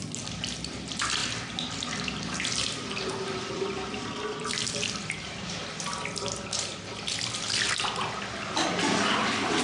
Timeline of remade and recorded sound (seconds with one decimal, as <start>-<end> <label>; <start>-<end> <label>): 0.0-9.6 recorded

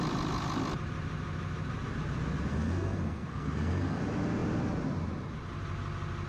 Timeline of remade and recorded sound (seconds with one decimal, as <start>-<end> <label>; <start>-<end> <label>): 0.0-2.5 recorded; 2.5-4.0 remade; 4.0-6.3 recorded